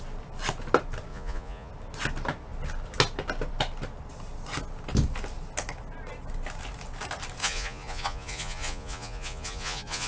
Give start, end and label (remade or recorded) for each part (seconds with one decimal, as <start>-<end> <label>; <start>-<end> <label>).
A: 0.0-1.1 recorded; 1.1-1.7 remade; 1.7-7.4 recorded; 7.4-10.1 remade